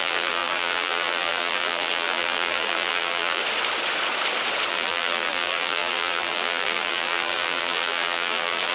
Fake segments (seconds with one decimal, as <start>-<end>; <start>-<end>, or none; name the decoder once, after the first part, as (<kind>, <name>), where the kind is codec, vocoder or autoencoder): 0.0-3.4 (vocoder, BigVGAN v2); 4.7-8.7